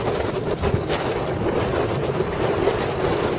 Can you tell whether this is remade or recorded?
recorded